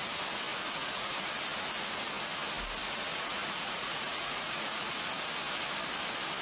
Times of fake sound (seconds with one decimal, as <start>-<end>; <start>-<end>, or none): 0.5-1.3; 3.1-5.0